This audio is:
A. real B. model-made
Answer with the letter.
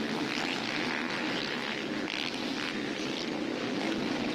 A